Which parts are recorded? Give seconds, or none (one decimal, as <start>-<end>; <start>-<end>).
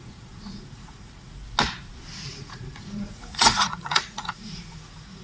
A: 1.4-2.3